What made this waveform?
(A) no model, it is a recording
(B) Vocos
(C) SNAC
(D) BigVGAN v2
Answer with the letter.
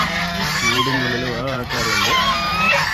D